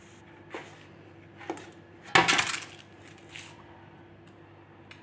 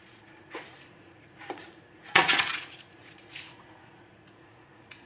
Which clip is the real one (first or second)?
first